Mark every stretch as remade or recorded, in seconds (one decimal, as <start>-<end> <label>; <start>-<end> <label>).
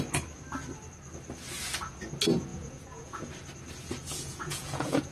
0.0-2.5 recorded; 2.5-3.3 remade; 3.3-4.0 recorded; 4.0-5.1 remade